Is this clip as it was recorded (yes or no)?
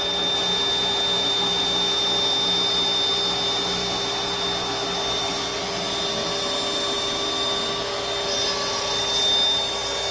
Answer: yes